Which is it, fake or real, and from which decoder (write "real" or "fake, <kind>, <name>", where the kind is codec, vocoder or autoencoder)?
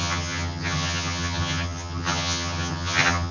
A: fake, vocoder, HiFi-GAN